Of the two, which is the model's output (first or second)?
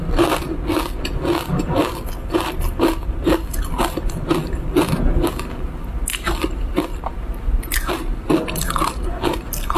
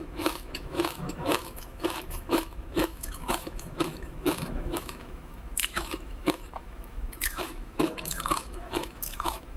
second